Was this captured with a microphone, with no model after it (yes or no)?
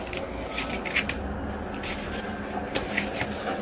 yes